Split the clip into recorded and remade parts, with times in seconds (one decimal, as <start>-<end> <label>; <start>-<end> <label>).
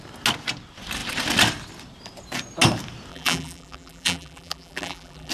0.0-3.1 recorded; 3.1-5.3 remade